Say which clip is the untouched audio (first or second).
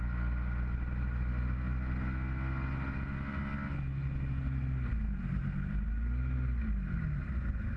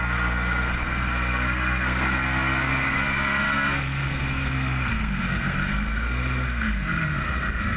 first